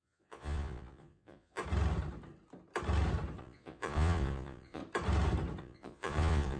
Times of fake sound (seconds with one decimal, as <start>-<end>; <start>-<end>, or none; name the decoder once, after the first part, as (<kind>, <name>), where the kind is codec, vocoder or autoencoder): 0.0-1.6 (vocoder, Vocos); 3.4-4.8; 5.6-6.6